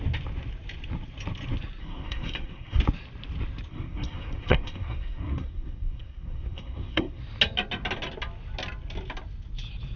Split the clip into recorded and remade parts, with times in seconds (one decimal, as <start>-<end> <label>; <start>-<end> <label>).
0.0-1.8 recorded; 1.8-2.8 remade; 2.8-3.7 recorded; 3.7-7.2 remade; 7.2-10.0 recorded